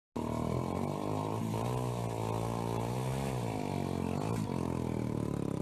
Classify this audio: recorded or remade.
recorded